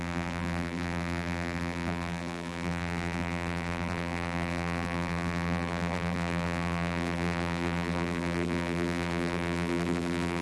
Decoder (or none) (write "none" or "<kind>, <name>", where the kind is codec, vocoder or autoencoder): vocoder, BigVGAN v2